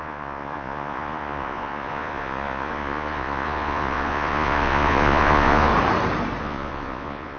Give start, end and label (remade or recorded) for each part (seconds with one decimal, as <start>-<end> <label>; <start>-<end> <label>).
0.0-5.7 remade; 5.7-6.4 recorded; 6.4-7.4 remade